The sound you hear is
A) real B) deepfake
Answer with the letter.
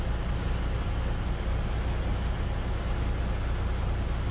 A